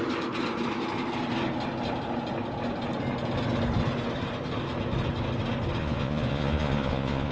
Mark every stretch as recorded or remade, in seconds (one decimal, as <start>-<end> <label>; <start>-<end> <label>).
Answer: 0.0-5.8 recorded; 5.8-7.3 remade